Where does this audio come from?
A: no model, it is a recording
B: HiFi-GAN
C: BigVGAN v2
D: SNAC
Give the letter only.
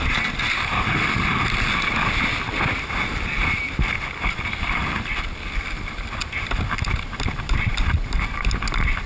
A